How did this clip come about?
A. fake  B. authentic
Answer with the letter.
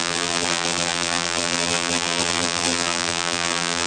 A